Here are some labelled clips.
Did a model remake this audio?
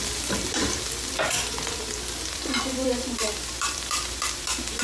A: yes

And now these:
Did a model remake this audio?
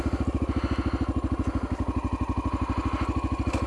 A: no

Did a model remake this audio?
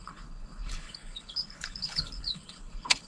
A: yes